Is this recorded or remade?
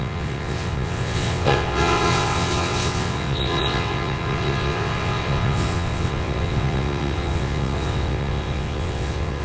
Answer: remade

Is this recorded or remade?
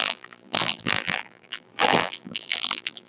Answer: remade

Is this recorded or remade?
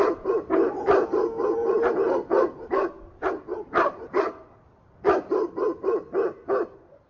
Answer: recorded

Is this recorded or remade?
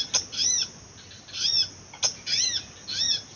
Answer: recorded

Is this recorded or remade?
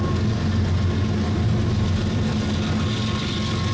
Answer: recorded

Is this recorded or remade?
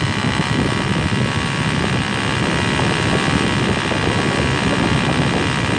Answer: remade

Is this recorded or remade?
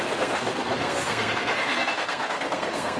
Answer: remade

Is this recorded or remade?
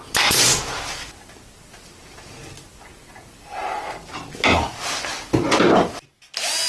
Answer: recorded